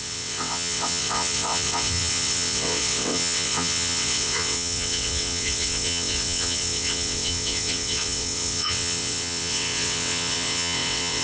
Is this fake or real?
fake